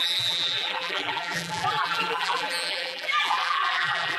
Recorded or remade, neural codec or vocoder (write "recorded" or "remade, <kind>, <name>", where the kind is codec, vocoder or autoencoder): remade, vocoder, BigVGAN v2